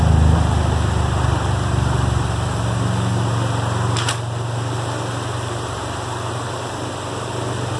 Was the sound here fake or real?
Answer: real